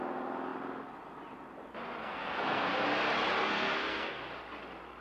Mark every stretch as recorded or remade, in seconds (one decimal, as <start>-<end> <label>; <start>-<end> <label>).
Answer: 0.0-2.0 recorded; 2.0-2.7 remade; 2.7-3.4 recorded; 3.4-4.2 remade; 4.2-5.0 recorded